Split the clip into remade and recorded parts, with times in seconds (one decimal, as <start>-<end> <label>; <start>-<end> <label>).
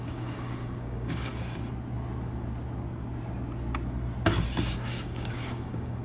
0.0-1.3 remade; 1.3-4.9 recorded; 4.9-6.0 remade